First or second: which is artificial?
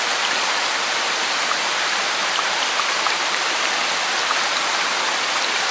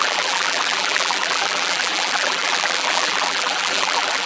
second